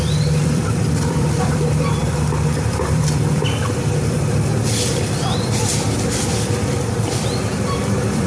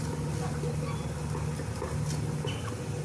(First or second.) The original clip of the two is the second